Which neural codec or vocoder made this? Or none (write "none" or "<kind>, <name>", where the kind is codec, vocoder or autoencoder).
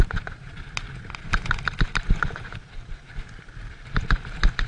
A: none